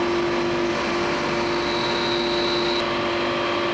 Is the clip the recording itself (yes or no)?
yes